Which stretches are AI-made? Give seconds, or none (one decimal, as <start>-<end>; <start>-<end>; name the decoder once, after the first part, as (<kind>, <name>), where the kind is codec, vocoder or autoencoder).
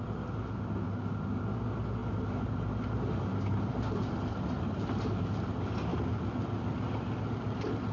none